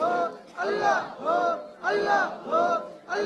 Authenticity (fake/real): real